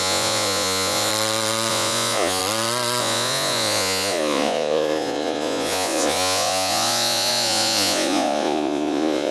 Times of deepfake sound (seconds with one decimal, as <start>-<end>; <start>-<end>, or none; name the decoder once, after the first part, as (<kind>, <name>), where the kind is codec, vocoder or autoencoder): 0.0-1.1 (vocoder, Vocos); 1.7-2.4; 3.0-9.3